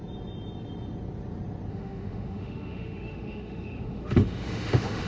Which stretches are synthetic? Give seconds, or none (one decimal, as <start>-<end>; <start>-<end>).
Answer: 1.7-5.1